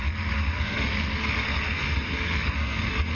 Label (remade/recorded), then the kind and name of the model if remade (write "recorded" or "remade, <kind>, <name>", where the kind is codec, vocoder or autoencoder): remade, codec, SNAC